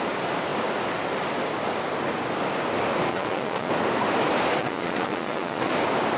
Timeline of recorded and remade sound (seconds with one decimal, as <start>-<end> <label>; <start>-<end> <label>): 0.0-3.1 recorded; 3.1-3.7 remade; 3.7-4.6 recorded; 4.6-5.7 remade; 5.7-6.2 recorded